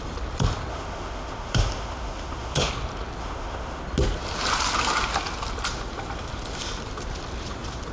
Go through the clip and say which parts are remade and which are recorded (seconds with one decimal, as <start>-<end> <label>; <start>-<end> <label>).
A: 0.0-0.7 recorded; 0.7-2.7 remade; 2.7-3.2 recorded; 3.2-3.8 remade; 3.8-7.9 recorded